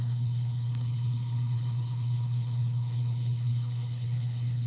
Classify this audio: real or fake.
fake